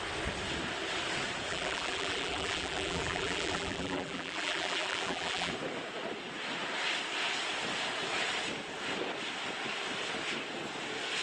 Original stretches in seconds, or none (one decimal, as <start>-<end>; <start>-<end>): 0.0-1.5; 5.5-11.2